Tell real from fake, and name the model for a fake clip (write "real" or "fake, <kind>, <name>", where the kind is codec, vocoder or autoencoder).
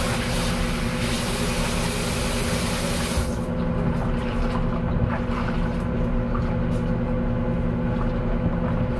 real